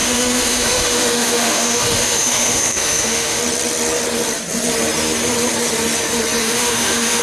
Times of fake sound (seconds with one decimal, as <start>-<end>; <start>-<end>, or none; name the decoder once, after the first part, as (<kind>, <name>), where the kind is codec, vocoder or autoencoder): 0.0-3.4 (autoencoder, DAC-VAE); 6.4-7.2